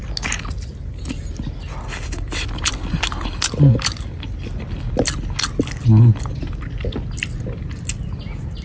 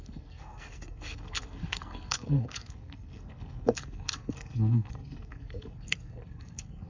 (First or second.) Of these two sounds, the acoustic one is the first